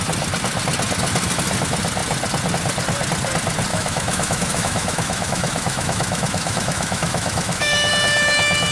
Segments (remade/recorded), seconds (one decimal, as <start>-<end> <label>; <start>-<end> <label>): 0.0-3.7 recorded; 3.7-7.9 remade; 7.9-8.7 recorded